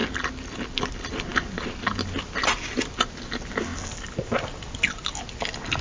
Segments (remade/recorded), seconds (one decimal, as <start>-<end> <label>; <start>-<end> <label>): 0.0-5.8 recorded